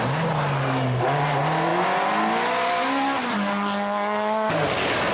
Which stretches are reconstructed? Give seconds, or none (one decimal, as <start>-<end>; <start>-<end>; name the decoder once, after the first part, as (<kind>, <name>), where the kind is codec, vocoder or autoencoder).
none

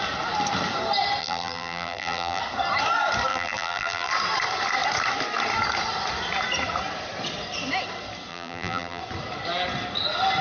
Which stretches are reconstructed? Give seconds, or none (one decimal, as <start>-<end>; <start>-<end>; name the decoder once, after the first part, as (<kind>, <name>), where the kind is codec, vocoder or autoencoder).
1.2-2.4 (vocoder, BigVGAN v2); 3.3-4.1; 8.3-9.0

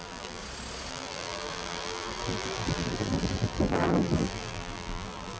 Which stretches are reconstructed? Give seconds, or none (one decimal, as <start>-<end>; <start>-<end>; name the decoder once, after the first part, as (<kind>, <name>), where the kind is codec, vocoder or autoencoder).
0.0-0.4 (vocoder, BigVGAN v2); 0.9-5.4

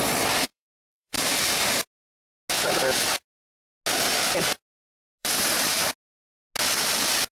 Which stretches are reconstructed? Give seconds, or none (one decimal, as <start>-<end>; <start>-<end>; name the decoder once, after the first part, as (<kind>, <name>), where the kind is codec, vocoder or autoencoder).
0.5-1.3 (vocoder, BigVGAN v2); 5.2-5.9